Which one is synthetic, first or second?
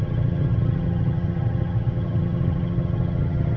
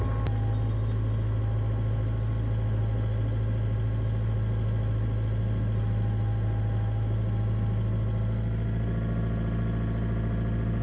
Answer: first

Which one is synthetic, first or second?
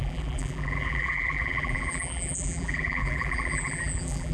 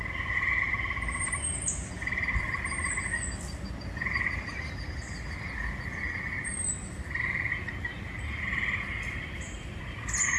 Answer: first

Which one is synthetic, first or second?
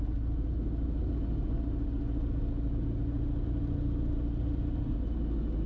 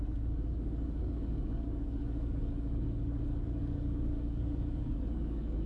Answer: second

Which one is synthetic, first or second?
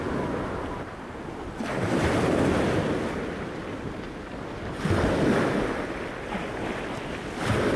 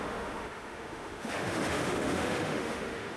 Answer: second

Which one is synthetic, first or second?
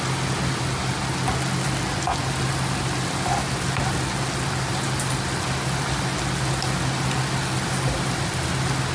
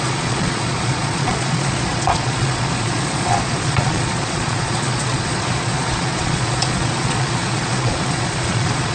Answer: second